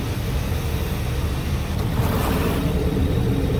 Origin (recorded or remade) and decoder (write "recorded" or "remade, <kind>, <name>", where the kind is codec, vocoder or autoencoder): recorded